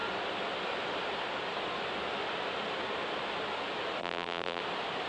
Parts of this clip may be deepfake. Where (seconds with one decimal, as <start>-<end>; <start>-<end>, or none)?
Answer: 4.0-4.6